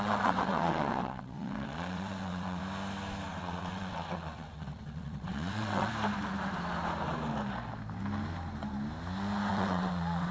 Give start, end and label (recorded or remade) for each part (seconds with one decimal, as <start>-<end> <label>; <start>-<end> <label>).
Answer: 0.0-2.6 remade; 2.6-3.4 recorded; 3.4-5.9 remade; 5.9-9.5 recorded; 9.5-10.3 remade